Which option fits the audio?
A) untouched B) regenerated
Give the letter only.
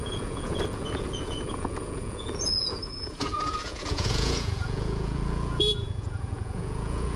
B